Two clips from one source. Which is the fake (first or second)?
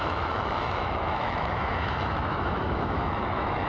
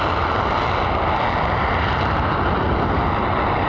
first